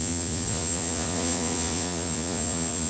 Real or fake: fake